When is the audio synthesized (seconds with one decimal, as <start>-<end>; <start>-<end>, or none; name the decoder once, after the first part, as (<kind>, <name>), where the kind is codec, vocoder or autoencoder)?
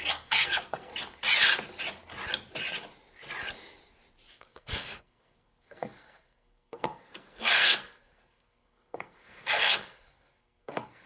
0.0-0.9 (codec, SNAC); 4.3-11.1